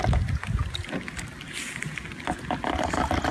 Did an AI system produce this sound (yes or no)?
no